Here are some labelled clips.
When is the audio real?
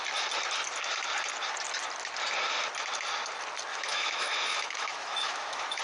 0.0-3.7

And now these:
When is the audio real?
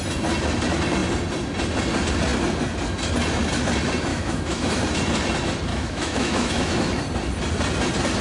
0.0-4.1; 4.8-5.7; 7.0-8.2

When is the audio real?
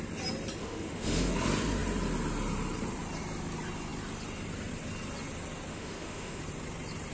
0.0-0.6; 1.3-5.7; 6.4-7.1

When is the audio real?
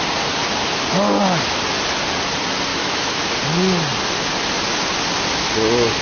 0.0-2.7; 3.3-6.0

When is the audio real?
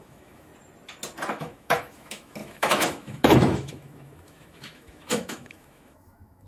0.5-1.3